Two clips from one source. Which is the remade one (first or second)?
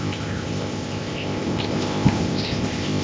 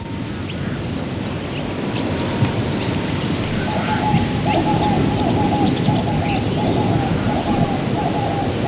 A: first